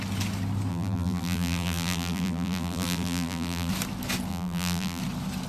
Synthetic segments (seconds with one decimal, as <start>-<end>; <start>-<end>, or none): 0.7-3.7; 4.3-5.0